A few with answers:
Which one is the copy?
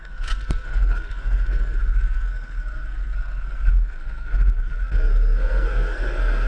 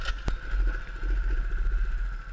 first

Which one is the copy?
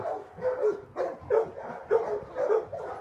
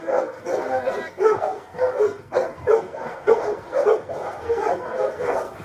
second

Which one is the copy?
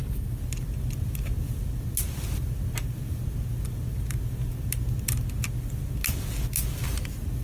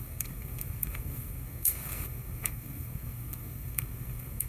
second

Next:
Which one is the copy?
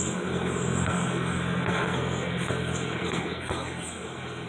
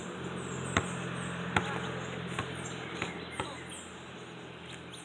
first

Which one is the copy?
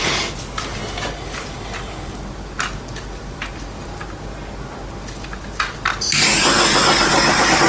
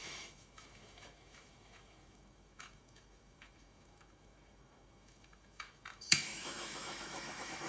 second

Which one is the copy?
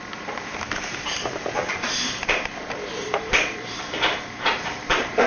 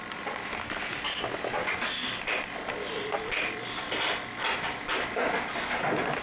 first